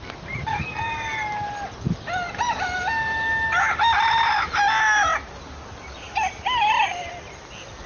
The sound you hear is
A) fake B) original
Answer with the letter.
B